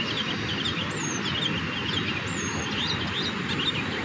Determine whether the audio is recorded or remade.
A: recorded